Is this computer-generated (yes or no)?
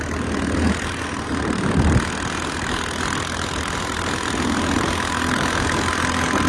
no